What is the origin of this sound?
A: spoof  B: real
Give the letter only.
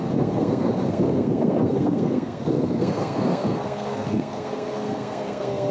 A